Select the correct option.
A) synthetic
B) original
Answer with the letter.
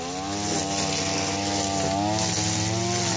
B